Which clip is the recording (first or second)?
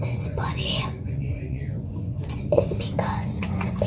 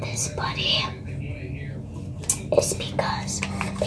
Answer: second